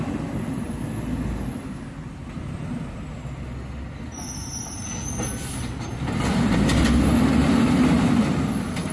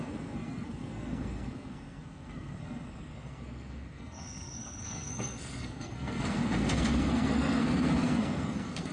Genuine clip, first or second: first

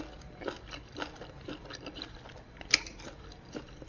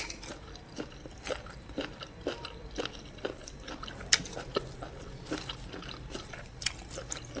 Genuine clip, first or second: first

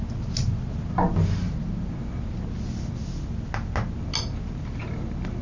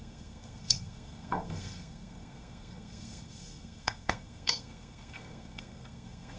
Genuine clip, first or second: first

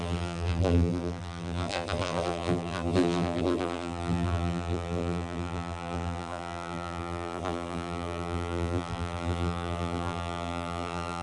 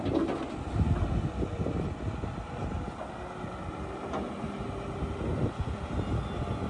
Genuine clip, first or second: second